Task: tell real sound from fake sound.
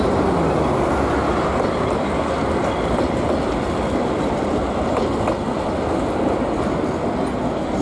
real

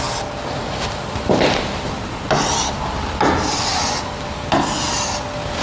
real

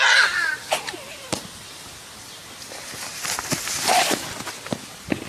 real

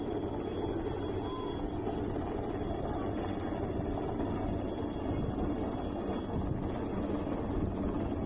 real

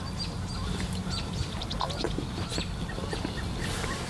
real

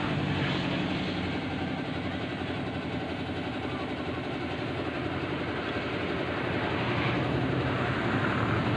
real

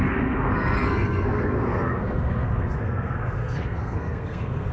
fake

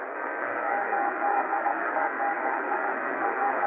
fake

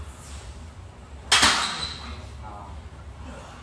real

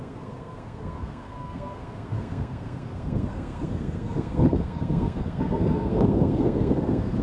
fake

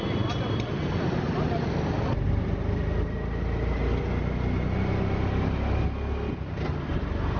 real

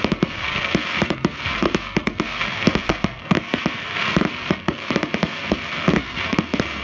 fake